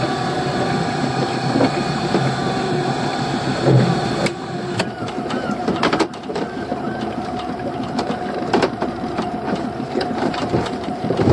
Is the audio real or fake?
fake